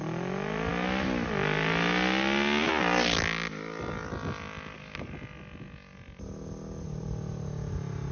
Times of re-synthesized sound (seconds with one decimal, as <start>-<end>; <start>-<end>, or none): none